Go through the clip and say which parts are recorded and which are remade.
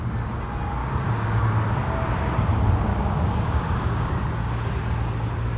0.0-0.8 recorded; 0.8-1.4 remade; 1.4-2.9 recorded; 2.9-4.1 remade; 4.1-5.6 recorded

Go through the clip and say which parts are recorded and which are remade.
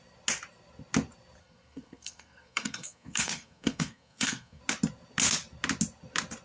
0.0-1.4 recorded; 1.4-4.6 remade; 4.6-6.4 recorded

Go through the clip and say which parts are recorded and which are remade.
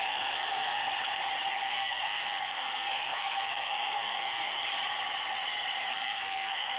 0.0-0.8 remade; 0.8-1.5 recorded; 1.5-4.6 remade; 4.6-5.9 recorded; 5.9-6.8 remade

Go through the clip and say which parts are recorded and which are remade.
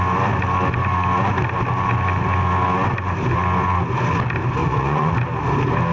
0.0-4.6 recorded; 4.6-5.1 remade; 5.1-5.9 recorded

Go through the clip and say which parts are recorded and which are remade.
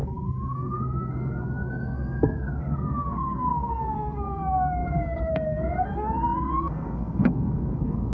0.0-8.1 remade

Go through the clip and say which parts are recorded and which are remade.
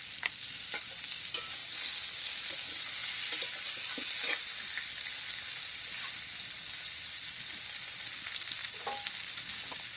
0.0-10.0 recorded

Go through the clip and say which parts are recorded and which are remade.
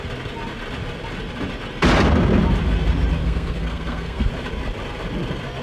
0.0-3.2 recorded; 3.2-4.3 remade; 4.3-5.6 recorded